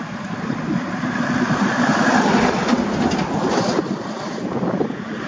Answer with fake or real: real